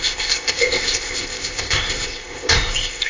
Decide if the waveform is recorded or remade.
remade